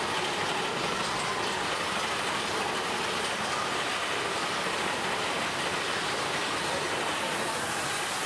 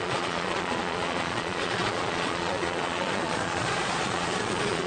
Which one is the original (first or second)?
first